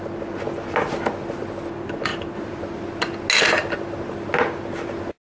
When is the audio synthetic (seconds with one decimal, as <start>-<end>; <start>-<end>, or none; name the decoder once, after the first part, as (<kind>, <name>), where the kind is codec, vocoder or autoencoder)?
none